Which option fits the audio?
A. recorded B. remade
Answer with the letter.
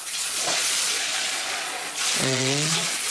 B